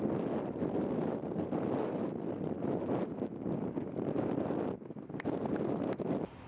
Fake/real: real